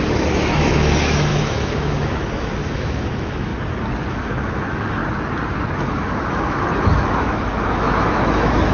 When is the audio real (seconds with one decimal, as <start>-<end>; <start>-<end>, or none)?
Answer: 3.5-4.1; 5.0-5.8